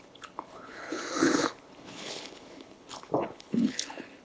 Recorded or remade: remade